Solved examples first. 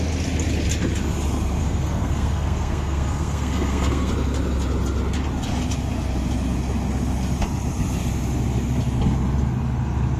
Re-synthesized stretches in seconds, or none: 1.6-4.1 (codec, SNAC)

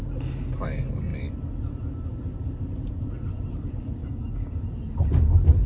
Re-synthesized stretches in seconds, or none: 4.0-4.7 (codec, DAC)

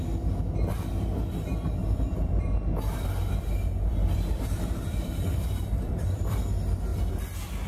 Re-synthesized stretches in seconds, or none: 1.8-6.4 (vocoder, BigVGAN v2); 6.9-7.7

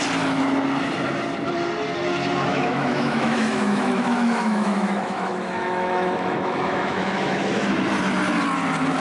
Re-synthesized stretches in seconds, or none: 2.5-7.7 (autoencoder, DAC-VAE)

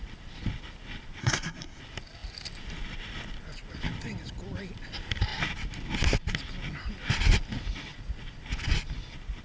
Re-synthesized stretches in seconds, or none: 1.2-1.8 (codec, SNAC)